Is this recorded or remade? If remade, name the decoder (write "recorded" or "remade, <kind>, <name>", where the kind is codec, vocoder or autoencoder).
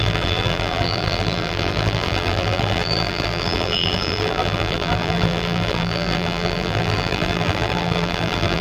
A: remade, vocoder, BigVGAN v2